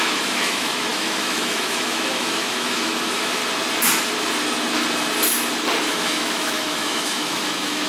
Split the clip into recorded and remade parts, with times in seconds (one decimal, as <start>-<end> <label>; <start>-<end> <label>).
0.0-3.4 remade; 3.4-5.9 recorded; 5.9-7.9 remade